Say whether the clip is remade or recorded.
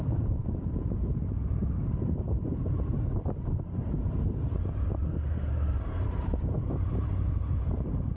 remade